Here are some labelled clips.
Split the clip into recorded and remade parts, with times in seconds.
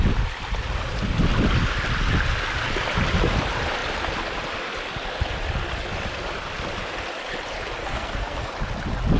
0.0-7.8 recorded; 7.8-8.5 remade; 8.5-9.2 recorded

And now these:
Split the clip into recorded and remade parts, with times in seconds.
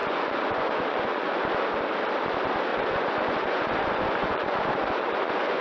0.0-1.4 remade; 1.4-2.7 recorded; 2.7-5.6 remade